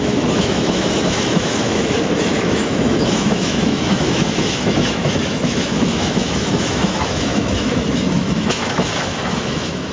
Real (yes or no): no